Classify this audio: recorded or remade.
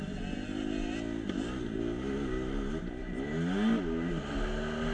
recorded